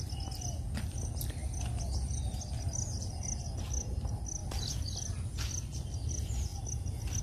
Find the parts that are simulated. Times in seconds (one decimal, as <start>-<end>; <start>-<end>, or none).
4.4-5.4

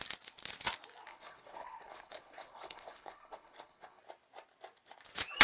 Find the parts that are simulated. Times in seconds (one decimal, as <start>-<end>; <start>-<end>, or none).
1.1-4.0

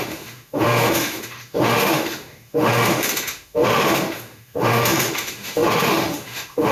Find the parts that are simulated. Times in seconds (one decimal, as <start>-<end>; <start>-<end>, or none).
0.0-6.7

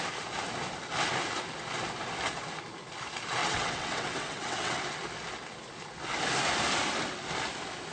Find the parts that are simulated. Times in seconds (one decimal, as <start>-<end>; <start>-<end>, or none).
3.4-4.8

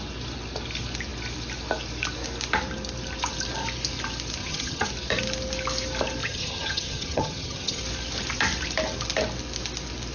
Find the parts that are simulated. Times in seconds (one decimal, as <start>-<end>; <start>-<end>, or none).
4.4-4.9; 6.2-7.8